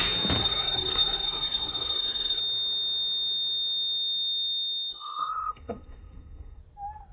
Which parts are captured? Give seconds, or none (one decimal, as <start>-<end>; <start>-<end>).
0.0-0.4; 2.4-4.9; 6.6-7.1